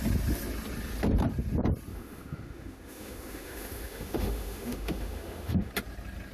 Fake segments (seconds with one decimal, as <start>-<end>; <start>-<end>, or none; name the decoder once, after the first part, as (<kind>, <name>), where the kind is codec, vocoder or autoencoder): 1.9-5.7 (autoencoder, DAC-VAE)